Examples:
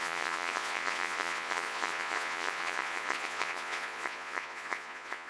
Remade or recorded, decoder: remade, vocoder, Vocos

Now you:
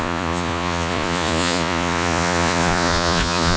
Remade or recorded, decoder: remade, vocoder, Vocos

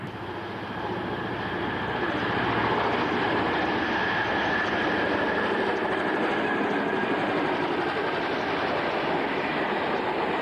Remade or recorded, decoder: recorded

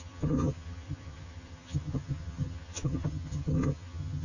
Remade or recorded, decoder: remade, vocoder, HiFi-GAN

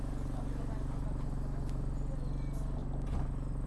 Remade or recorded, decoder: recorded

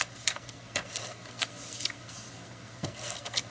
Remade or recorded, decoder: remade, codec, SNAC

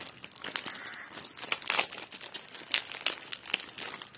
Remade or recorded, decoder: recorded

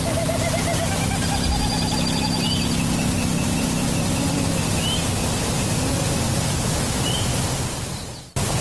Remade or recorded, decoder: recorded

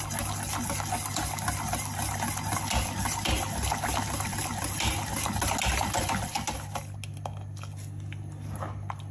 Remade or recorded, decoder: recorded